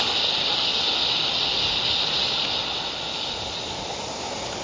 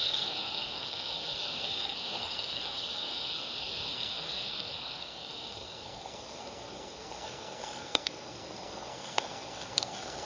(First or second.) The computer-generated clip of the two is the second